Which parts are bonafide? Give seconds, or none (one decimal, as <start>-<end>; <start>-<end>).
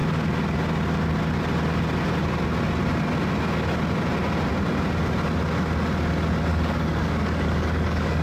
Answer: 0.0-6.5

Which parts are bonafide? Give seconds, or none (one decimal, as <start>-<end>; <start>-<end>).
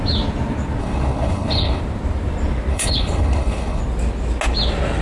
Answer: 0.0-0.8; 1.8-2.7; 3.8-5.0